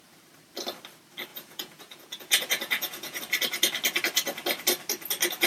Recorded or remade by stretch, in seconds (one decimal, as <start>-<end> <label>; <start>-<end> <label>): 0.0-1.3 recorded; 1.3-3.2 remade; 3.2-5.5 recorded